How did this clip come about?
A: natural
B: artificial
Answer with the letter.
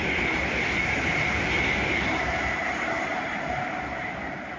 A